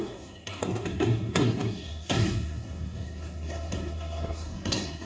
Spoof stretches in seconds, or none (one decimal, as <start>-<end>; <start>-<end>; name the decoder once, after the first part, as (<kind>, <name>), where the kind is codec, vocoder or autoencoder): 0.0-5.1 (codec, SNAC)